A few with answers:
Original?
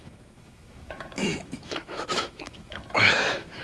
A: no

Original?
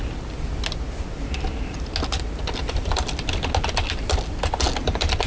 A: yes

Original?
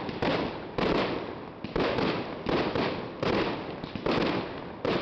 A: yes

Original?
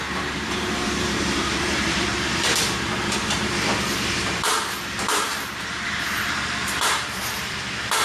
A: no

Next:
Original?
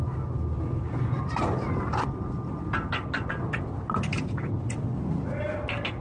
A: yes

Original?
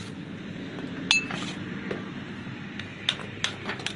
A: yes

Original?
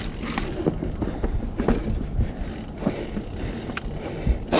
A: yes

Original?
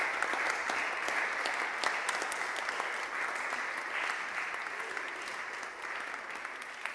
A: yes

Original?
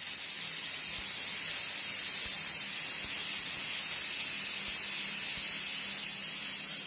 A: yes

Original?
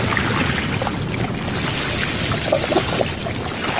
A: yes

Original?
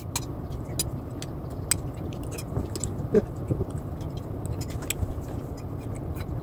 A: yes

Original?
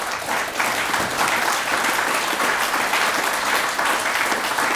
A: yes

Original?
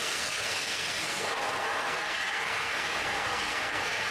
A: no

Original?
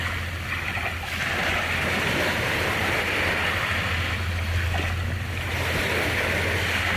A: yes